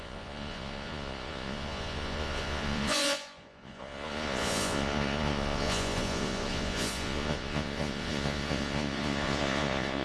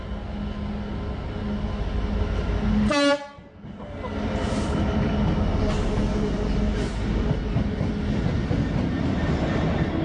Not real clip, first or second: first